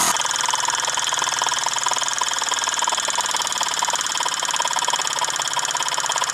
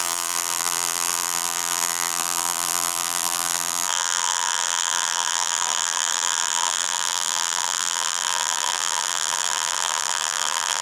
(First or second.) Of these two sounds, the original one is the first